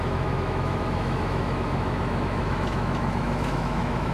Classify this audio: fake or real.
fake